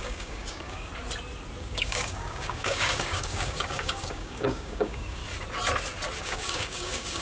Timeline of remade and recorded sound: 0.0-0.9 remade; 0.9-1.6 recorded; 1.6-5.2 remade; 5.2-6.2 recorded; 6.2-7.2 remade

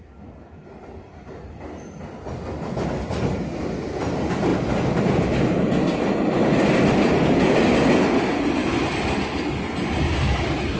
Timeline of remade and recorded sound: 0.0-10.8 recorded